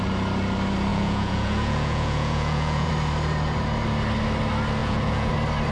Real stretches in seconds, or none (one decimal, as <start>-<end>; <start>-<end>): 0.0-0.9; 2.9-4.8; 5.3-5.7